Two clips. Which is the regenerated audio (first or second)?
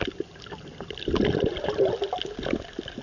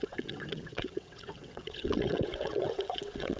second